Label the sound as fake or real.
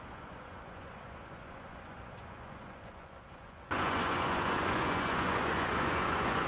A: fake